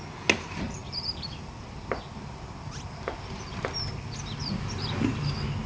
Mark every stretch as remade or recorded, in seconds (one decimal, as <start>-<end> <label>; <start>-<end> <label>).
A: 0.0-0.8 recorded; 0.8-1.5 remade; 1.5-5.7 recorded